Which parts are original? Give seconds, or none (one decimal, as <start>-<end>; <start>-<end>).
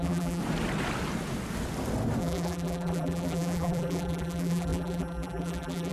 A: 0.4-2.2